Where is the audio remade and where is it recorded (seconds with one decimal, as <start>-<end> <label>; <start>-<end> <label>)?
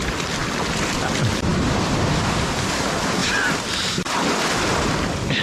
0.0-1.5 recorded; 1.5-2.7 remade; 2.7-3.2 recorded; 3.2-5.4 remade